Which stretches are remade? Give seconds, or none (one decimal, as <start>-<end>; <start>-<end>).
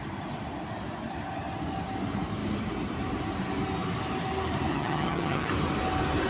4.7-5.5